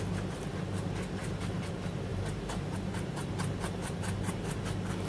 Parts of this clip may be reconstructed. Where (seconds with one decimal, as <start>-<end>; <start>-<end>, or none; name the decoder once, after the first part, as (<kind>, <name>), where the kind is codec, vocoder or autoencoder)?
1.2-1.7 (vocoder, BigVGAN v2); 2.1-4.6